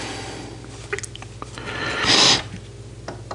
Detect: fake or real real